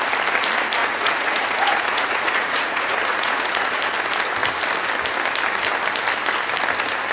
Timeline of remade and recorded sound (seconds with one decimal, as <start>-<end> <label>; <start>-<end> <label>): 0.0-0.8 recorded; 0.8-3.8 remade; 3.8-7.1 recorded